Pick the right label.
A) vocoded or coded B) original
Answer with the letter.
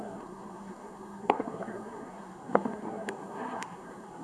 A